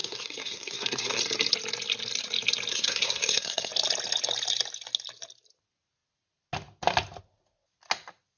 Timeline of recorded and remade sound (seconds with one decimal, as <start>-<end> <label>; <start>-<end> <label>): 0.0-1.2 remade; 1.2-2.7 recorded; 2.7-3.7 remade; 3.7-8.4 recorded